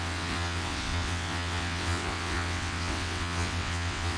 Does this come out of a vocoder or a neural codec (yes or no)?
yes